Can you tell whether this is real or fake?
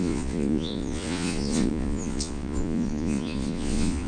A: fake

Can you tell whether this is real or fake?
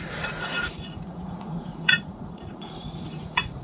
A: fake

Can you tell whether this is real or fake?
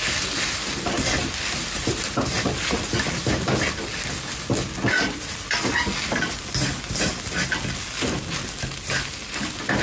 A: real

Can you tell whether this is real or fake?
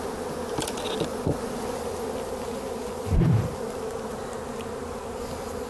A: real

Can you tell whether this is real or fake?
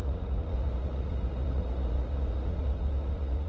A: fake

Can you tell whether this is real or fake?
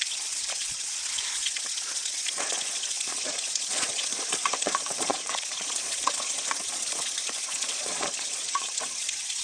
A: fake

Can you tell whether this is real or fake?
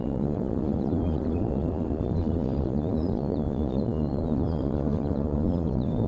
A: fake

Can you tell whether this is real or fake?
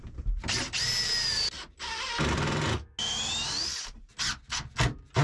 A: real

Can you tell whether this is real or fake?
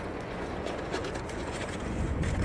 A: fake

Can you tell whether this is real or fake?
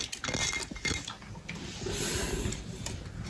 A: real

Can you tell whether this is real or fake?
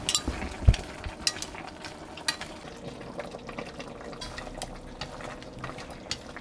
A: real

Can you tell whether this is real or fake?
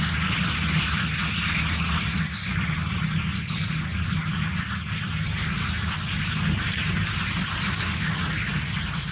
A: real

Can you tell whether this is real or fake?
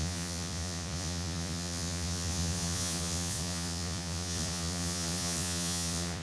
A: fake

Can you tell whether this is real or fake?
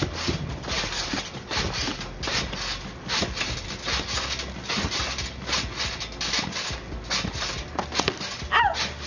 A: real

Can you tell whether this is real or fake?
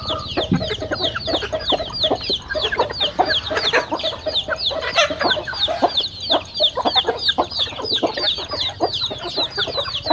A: real